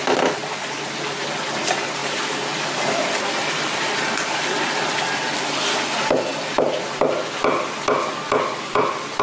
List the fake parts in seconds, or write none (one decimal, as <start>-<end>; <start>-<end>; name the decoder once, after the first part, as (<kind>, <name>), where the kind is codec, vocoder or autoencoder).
none